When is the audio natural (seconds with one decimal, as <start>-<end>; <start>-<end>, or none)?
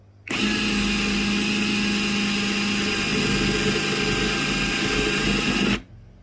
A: 0.0-6.2